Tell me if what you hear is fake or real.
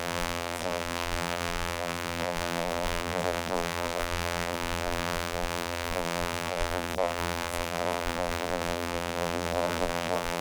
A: fake